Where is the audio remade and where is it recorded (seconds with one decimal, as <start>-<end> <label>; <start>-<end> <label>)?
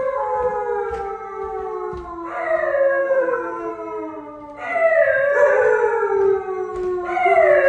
0.0-3.0 recorded; 3.0-3.7 remade; 3.7-7.7 recorded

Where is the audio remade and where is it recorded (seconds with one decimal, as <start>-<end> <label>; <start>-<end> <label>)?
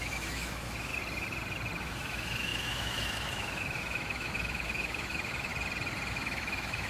0.0-0.9 remade; 0.9-1.8 recorded; 1.8-5.5 remade; 5.5-6.1 recorded; 6.1-6.9 remade